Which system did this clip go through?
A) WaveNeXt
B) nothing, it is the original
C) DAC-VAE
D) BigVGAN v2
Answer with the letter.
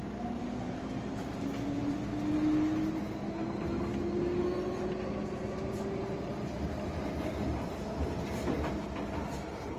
B